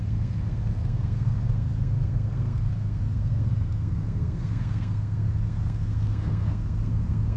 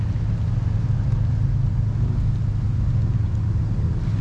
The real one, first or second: second